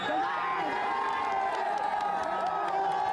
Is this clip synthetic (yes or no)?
no